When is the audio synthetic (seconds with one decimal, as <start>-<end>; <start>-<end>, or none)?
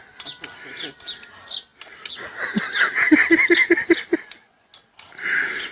4.1-4.7